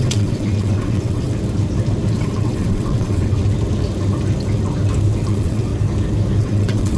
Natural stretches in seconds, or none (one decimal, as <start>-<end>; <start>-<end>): 1.3-2.1; 3.4-5.3; 5.7-6.4

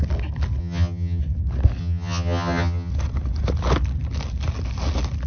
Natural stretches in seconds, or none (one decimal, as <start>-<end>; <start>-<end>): 0.0-0.6; 1.2-1.8; 2.9-5.3

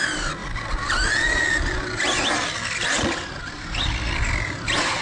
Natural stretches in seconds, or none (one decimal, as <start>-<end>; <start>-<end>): 0.0-5.0

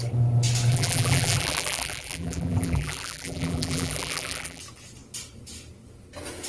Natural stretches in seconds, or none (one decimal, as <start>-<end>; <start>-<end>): 0.0-0.7; 4.6-6.5

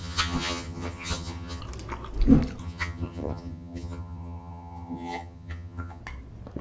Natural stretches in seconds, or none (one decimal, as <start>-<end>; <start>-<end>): 1.6-2.6; 6.0-6.6

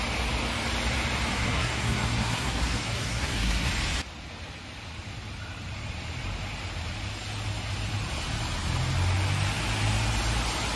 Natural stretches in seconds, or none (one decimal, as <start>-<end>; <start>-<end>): 0.0-1.3; 3.7-10.8

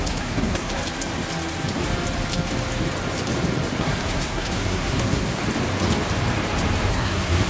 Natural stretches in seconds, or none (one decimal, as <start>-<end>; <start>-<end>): 0.8-3.8; 5.4-6.9

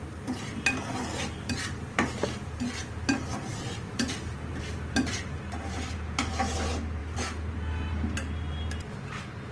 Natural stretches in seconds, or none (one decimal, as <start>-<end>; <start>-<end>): 0.0-1.1; 2.6-3.5; 6.3-9.5